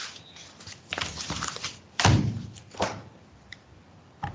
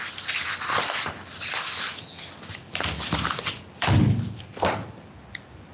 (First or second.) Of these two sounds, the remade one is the first